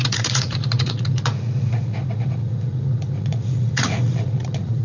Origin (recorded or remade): remade